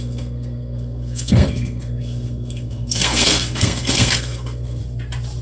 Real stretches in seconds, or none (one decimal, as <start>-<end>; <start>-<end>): 4.8-5.4